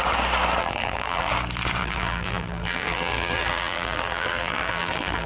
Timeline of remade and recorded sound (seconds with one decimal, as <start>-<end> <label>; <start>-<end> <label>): 0.0-0.6 recorded; 0.6-1.3 remade; 1.3-1.8 recorded; 1.8-5.3 remade